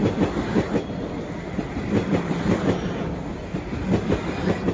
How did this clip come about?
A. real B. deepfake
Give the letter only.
B